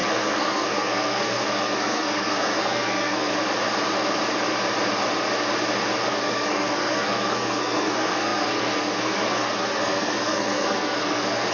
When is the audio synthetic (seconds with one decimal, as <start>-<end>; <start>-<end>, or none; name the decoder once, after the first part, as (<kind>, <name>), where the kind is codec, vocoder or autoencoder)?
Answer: 0.0-3.3 (codec, SNAC); 6.1-11.5